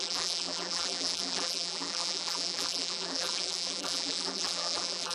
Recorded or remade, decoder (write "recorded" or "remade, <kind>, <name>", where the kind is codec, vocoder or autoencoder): remade, vocoder, BigVGAN v2